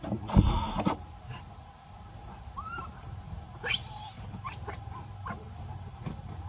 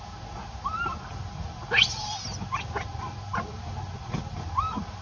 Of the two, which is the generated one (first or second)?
first